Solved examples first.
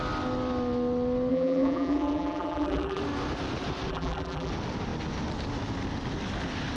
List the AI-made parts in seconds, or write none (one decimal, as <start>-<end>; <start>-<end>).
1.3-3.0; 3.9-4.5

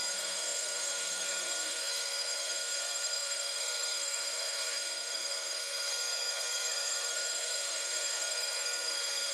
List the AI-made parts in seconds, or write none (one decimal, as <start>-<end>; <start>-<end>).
0.0-9.3

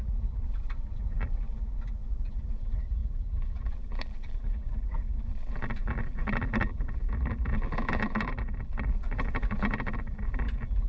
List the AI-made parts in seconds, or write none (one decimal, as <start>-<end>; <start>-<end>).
0.0-10.9